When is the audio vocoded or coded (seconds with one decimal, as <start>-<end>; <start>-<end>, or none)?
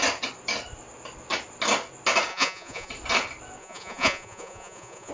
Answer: 2.3-2.9; 3.6-5.1